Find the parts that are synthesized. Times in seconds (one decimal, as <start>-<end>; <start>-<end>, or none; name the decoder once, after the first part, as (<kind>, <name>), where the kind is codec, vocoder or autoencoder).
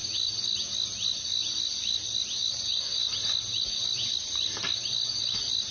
none